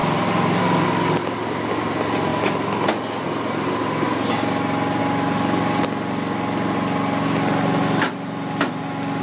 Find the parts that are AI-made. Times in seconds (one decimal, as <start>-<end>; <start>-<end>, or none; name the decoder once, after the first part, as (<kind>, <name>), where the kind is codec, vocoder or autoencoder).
none